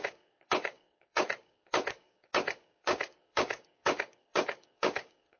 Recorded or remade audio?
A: remade